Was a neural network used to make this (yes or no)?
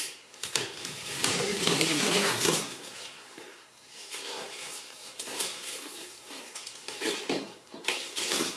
yes